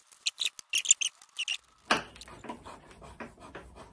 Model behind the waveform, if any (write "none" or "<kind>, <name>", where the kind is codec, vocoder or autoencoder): none